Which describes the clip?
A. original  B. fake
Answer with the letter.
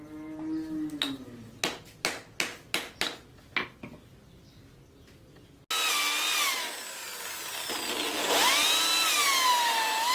A